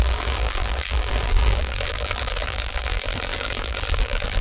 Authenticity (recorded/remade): remade